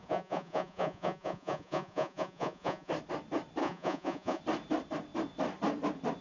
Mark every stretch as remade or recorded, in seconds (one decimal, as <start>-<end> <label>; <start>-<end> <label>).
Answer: 0.0-2.9 remade; 2.9-3.6 recorded; 3.6-4.4 remade; 4.4-6.2 recorded